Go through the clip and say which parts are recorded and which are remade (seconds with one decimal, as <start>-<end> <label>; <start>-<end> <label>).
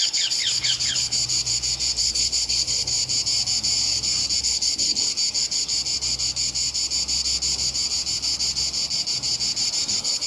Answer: 0.0-1.2 remade; 1.2-2.0 recorded; 2.0-2.9 remade; 2.9-4.4 recorded; 4.4-5.1 remade; 5.1-9.9 recorded; 9.9-10.3 remade